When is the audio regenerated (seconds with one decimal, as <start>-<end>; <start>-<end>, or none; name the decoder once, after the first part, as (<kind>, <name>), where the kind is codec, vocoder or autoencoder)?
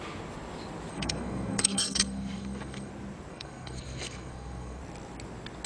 0.9-2.9 (codec, SNAC); 3.3-4.8